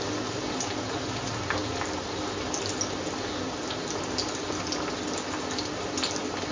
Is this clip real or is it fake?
real